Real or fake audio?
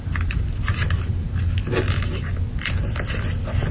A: real